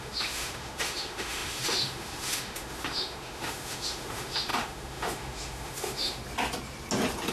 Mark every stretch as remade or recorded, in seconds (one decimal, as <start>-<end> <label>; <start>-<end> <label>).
0.0-6.2 remade; 6.2-7.3 recorded